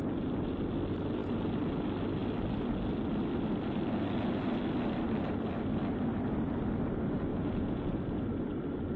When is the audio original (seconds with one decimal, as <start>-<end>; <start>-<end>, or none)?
0.0-7.3; 8.0-9.0